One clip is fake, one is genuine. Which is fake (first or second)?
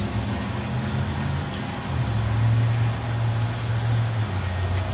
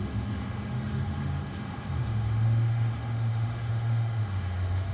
second